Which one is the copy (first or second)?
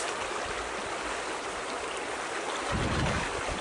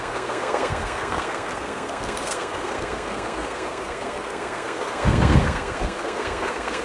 second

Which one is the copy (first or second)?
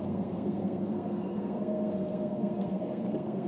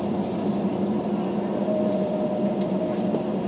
first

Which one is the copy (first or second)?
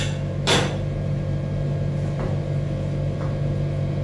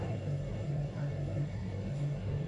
second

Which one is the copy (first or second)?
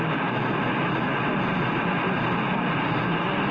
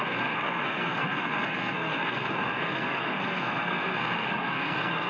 second